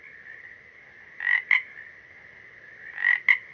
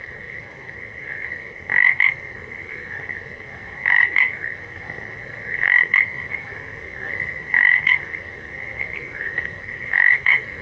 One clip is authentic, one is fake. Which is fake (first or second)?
second